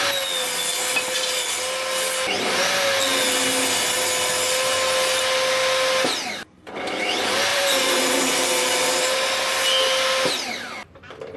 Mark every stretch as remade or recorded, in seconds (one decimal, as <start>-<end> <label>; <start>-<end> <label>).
0.0-7.5 recorded; 7.5-9.3 remade; 9.3-11.4 recorded